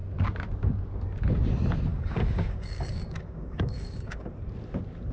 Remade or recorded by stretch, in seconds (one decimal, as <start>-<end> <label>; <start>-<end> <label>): 0.0-1.9 recorded; 1.9-4.3 remade; 4.3-5.1 recorded